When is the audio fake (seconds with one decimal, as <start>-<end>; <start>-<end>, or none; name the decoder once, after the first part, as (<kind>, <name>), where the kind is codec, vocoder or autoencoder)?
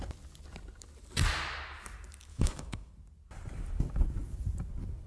2.3-2.9 (autoencoder, DAC-VAE)